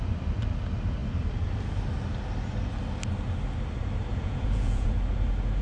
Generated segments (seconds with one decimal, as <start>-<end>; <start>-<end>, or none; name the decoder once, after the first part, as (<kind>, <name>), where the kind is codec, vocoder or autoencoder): 4.1-4.9 (vocoder, Vocos)